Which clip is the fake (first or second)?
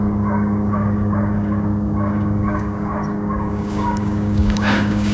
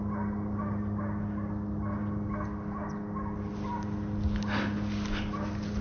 first